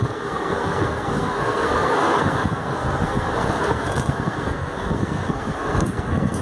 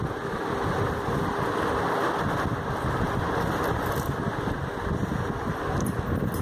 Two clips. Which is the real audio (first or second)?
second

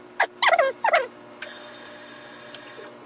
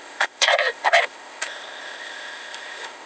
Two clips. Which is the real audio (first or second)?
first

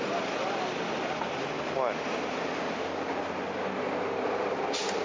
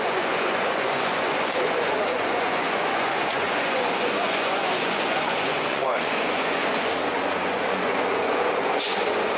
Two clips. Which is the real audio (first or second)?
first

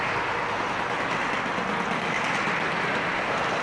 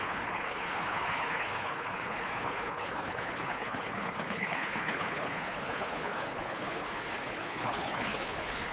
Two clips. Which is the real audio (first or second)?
first